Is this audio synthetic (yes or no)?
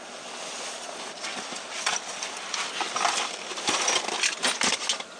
no